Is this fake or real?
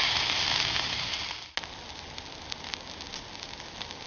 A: real